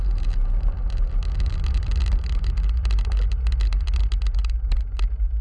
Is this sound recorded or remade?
recorded